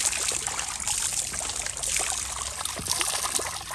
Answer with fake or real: real